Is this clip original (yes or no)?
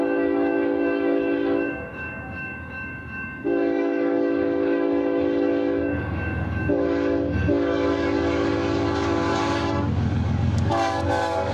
no